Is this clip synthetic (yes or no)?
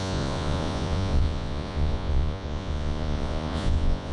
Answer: yes